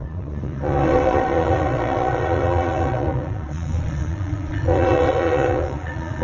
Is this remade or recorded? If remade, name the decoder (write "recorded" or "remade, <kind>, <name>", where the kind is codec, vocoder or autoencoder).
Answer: remade, vocoder, Vocos